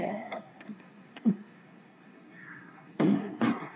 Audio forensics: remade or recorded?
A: remade